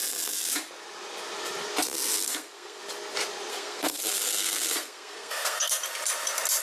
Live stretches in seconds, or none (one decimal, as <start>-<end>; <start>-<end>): 0.0-2.1; 2.8-3.5; 5.8-6.6